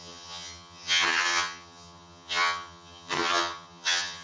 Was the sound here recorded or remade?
remade